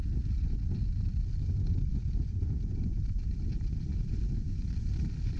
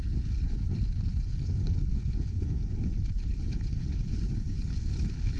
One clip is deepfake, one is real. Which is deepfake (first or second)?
second